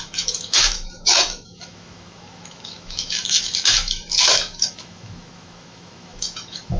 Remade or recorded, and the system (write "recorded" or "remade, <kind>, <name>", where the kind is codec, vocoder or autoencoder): remade, autoencoder, DAC-VAE